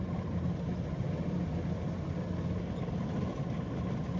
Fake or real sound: real